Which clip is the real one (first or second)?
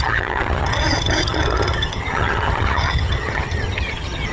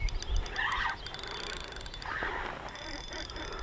second